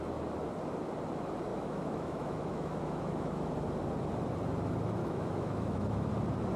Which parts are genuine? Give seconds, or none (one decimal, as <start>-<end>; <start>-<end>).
0.0-1.5; 3.5-5.0; 6.1-6.6